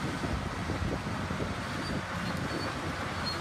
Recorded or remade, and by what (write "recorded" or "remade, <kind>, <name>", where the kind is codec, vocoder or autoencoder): recorded